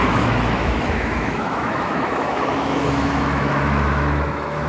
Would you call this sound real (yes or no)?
no